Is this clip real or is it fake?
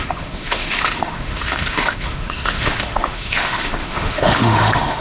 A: fake